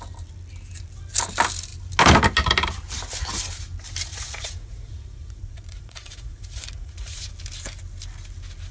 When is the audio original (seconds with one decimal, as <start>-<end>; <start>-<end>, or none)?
0.0-4.1; 7.3-8.7